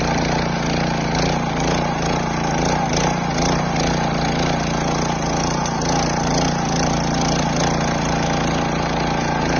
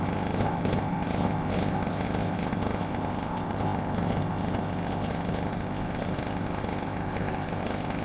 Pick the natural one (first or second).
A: first